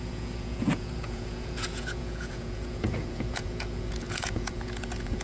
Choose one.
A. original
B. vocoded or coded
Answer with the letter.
B